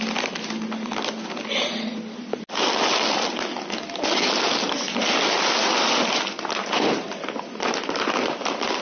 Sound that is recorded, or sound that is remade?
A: recorded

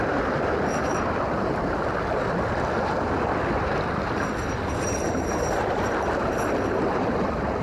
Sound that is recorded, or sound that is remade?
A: recorded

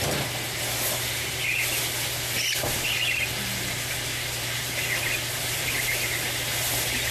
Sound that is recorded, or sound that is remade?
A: recorded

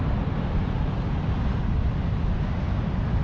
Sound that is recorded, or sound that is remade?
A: recorded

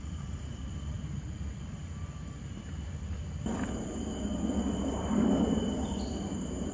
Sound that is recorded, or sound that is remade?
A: remade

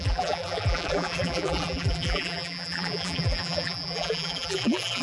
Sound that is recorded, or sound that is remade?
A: remade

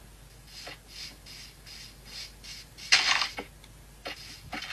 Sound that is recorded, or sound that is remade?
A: recorded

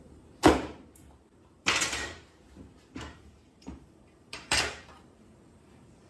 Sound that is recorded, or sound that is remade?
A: remade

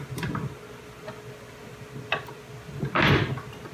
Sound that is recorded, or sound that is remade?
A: recorded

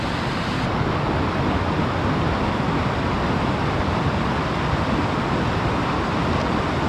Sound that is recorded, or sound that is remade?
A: recorded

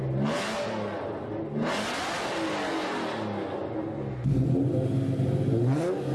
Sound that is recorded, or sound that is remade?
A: recorded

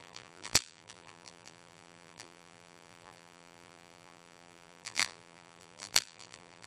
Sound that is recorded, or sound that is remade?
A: remade